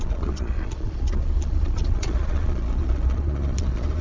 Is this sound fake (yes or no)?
yes